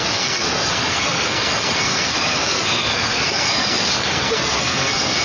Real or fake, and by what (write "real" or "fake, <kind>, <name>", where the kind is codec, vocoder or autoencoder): fake, codec, SNAC